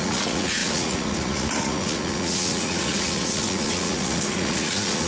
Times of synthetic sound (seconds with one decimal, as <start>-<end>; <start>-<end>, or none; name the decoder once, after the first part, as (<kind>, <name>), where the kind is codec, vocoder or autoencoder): 0.0-5.1 (vocoder, Vocos)